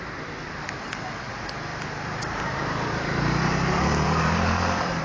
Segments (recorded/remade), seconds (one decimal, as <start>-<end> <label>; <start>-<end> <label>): 0.0-1.7 recorded; 1.7-5.0 remade